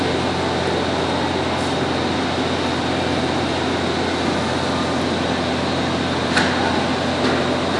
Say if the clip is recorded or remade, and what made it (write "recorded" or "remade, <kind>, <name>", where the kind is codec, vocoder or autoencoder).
recorded